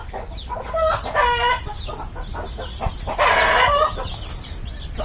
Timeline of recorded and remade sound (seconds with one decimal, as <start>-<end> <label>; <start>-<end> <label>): 0.0-5.0 recorded